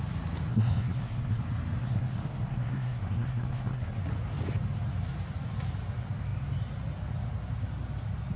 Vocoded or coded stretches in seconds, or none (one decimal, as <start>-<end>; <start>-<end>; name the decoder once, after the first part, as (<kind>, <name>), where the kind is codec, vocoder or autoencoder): 0.5-1.4 (codec, SNAC); 1.8-4.0